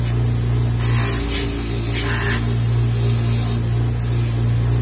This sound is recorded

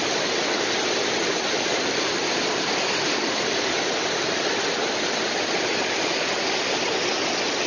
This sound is recorded